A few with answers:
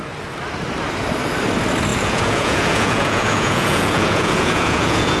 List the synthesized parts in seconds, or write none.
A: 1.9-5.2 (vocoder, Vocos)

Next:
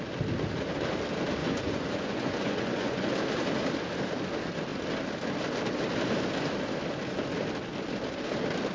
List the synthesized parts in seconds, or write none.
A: 1.4-3.1 (vocoder, Vocos)

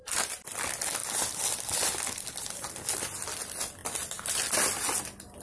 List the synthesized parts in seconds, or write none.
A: none

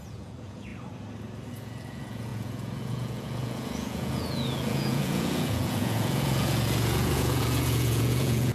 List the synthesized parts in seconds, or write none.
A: 0.0-0.7 (vocoder, Vocos); 1.5-8.5